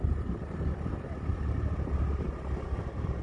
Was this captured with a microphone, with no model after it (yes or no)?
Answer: yes